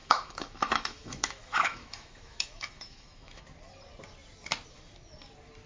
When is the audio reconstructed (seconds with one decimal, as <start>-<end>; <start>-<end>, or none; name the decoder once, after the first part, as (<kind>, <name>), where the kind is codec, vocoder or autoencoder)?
0.0-3.4 (autoencoder, DAC-VAE)